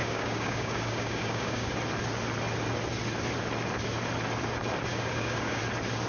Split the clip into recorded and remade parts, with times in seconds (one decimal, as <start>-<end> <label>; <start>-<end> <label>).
0.0-1.7 remade; 1.7-4.9 recorded; 4.9-5.6 remade; 5.6-6.1 recorded